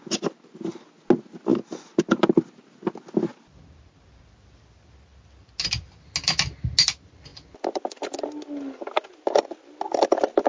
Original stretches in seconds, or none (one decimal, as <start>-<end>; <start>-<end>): 0.0-10.5

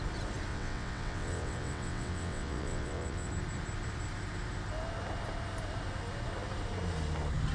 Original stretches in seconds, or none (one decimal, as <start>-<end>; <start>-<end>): 0.0-0.5; 3.3-7.5